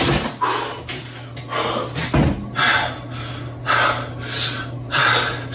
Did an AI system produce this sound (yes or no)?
no